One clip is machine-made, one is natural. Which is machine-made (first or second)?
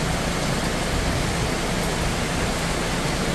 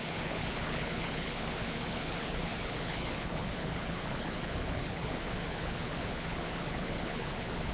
second